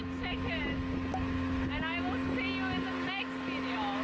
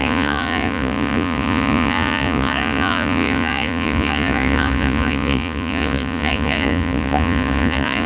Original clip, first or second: first